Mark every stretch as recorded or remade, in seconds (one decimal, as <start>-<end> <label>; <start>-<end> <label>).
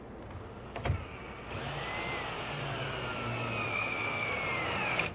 0.0-3.7 recorded; 3.7-4.4 remade; 4.4-5.1 recorded